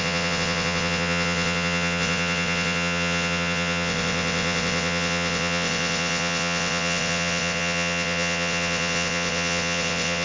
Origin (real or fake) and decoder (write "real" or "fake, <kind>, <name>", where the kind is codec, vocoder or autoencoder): fake, vocoder, WaveNeXt